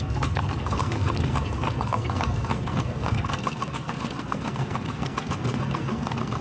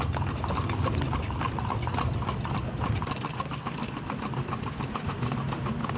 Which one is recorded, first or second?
second